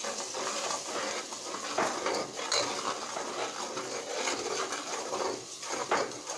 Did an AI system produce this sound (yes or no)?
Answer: no